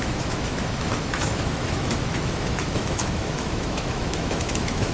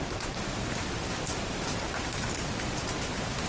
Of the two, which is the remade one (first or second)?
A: first